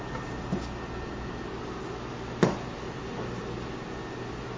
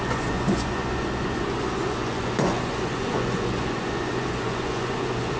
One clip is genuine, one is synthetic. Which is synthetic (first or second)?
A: second